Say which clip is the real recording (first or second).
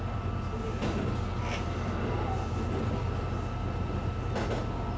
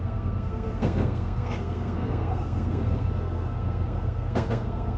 first